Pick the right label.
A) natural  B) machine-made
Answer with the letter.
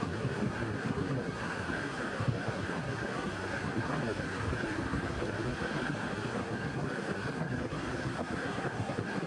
B